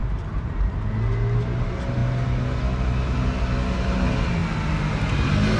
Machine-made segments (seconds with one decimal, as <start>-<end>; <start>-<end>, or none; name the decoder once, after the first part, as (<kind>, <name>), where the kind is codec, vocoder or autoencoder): 0.0-0.8 (vocoder, BigVGAN v2)

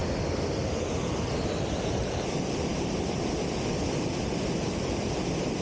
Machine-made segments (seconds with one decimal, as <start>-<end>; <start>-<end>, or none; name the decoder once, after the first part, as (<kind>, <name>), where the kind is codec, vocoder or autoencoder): 1.3-5.6 (vocoder, BigVGAN v2)

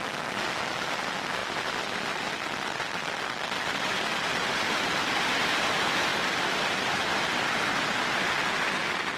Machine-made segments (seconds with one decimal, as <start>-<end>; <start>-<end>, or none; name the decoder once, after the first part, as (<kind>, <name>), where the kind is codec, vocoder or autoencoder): 1.4-5.1 (vocoder, BigVGAN v2); 6.1-7.1

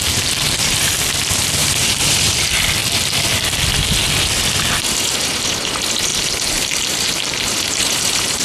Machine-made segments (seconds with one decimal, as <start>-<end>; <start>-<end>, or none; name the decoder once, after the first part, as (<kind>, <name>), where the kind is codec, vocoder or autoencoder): 1.6-2.4 (vocoder, BigVGAN v2); 6.1-7.5

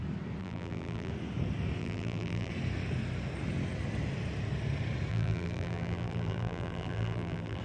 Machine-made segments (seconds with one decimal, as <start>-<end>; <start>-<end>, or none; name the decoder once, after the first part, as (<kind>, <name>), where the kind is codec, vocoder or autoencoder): 0.4-1.1 (vocoder, BigVGAN v2); 1.8-2.5; 5.1-7.6

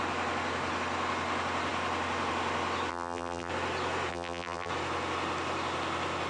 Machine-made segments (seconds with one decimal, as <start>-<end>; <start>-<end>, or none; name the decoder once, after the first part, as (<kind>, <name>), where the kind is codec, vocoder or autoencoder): 2.9-3.5 (vocoder, BigVGAN v2); 4.1-4.7

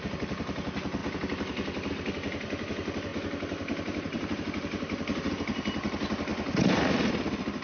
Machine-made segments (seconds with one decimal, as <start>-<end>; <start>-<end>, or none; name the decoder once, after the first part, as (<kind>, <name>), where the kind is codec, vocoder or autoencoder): 1.0-1.9 (vocoder, BigVGAN v2); 3.1-5.3